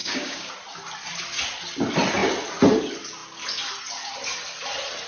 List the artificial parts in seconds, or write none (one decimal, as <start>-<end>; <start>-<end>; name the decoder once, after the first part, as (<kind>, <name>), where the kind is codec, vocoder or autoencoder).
0.0-0.5 (codec, DAC)